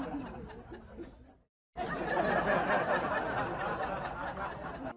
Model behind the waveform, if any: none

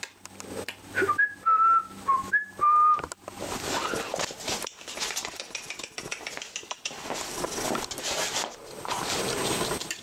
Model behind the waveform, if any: none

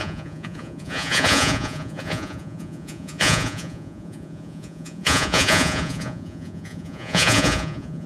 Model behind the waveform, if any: vocoder, Vocos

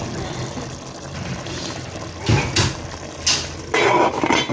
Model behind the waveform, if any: none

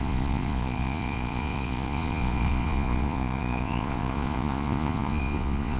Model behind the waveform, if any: vocoder, Vocos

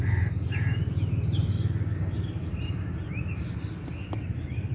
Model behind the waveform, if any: none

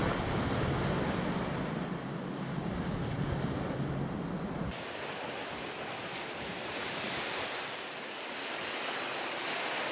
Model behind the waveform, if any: none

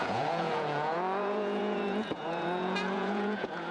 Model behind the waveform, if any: vocoder, Vocos